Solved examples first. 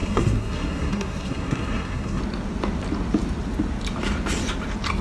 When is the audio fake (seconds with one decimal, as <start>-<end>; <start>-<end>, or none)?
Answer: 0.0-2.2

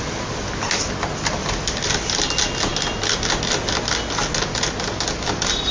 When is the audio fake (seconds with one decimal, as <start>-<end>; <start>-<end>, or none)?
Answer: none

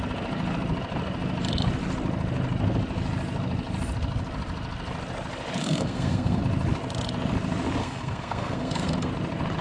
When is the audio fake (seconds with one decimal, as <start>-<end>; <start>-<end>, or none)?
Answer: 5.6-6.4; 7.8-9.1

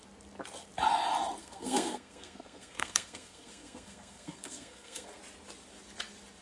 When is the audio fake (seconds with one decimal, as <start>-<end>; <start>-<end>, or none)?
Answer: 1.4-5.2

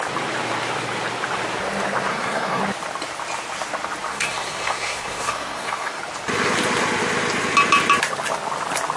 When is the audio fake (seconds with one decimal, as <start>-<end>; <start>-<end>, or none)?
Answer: 2.1-2.6; 4.1-6.0

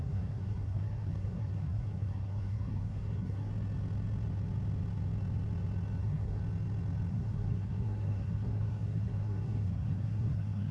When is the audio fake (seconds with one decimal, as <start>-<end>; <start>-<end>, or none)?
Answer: 0.0-3.5; 6.0-6.4; 7.1-10.7

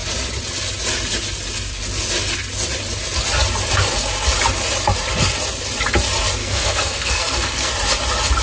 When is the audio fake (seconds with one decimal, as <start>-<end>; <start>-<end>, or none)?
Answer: 6.4-7.7